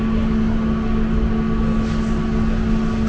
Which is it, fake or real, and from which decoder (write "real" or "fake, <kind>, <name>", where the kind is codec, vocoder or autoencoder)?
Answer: real